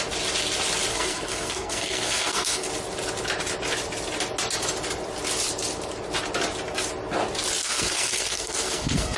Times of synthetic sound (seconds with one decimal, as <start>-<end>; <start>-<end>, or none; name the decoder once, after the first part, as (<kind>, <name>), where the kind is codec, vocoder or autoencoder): 0.9-2.7 (codec, SNAC); 7.6-9.2